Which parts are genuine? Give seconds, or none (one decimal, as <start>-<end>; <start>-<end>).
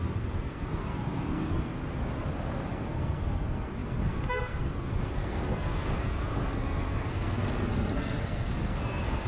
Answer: 1.7-2.6